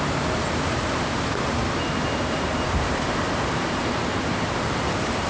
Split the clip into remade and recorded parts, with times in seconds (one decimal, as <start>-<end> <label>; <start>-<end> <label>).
0.0-1.6 recorded; 1.6-4.8 remade; 4.8-5.3 recorded